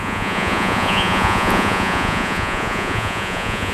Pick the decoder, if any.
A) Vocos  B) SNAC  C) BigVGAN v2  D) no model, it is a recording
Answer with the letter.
A